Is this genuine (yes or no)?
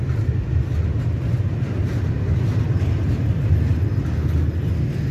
yes